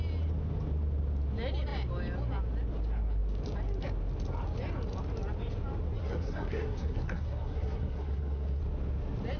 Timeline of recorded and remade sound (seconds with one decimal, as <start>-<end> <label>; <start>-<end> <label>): 0.0-6.0 recorded; 6.0-8.6 remade; 8.6-9.4 recorded

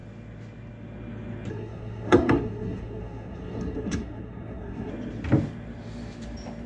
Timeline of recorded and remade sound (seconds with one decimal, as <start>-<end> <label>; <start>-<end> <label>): 0.0-1.5 recorded; 1.5-4.9 remade; 4.9-6.7 recorded

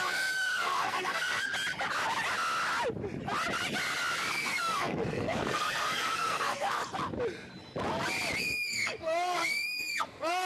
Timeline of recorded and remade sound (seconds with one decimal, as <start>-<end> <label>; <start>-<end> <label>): 0.0-1.5 remade; 1.5-4.3 recorded; 4.3-6.8 remade; 6.8-8.4 recorded; 8.4-10.5 remade

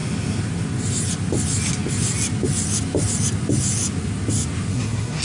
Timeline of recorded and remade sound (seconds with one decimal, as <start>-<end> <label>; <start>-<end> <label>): 0.0-4.7 recorded; 4.7-5.2 remade

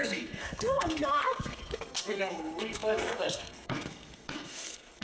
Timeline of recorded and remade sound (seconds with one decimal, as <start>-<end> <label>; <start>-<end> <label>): 0.0-5.0 remade

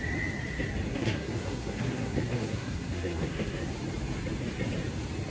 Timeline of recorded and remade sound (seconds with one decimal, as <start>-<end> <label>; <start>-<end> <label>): 0.0-0.9 recorded; 0.9-3.7 remade; 3.7-5.3 recorded

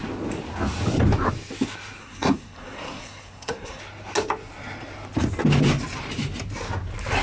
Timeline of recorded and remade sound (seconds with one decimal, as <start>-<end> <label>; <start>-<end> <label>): 0.0-2.0 recorded; 2.0-3.8 remade; 3.8-7.2 recorded